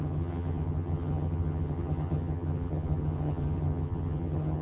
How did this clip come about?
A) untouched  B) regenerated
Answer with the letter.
B